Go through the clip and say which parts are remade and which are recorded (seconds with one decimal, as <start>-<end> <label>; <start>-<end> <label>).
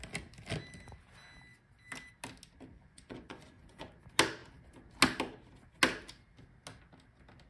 0.0-2.7 recorded; 2.7-3.9 remade; 3.9-7.5 recorded